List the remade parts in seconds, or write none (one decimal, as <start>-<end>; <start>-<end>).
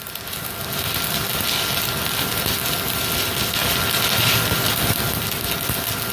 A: none